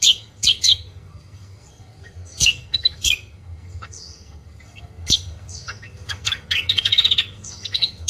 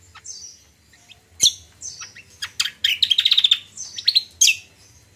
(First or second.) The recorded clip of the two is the second